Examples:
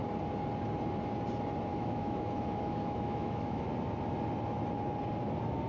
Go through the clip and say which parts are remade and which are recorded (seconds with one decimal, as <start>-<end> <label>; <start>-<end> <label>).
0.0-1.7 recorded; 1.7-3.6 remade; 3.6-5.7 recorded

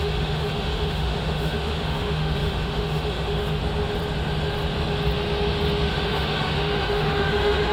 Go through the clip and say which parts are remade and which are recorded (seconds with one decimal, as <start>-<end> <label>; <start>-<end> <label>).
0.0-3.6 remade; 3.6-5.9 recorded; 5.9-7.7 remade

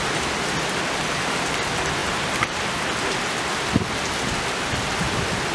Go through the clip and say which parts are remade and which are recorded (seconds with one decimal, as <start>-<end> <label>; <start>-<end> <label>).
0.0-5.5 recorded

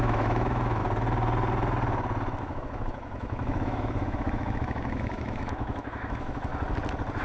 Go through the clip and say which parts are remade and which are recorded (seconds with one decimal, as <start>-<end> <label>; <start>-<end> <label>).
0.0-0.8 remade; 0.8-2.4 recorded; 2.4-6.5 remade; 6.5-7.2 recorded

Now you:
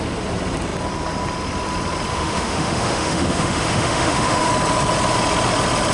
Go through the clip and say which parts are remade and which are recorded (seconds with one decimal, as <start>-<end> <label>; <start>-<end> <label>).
0.0-2.1 recorded; 2.1-4.5 remade; 4.5-5.9 recorded